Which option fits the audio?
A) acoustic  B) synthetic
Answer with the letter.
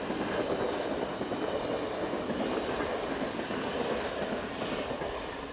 A